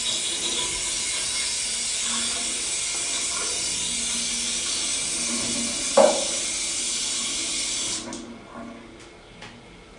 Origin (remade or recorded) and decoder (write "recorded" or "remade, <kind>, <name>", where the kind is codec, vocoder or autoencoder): recorded